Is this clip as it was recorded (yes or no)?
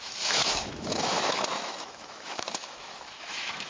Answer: no